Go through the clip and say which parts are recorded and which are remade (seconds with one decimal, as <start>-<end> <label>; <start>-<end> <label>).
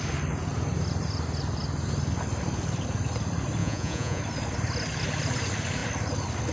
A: 0.0-3.6 recorded; 3.6-4.2 remade; 4.2-6.5 recorded